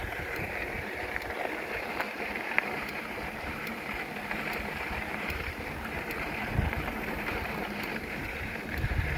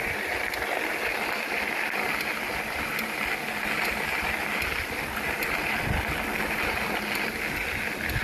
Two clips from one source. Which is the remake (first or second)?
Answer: first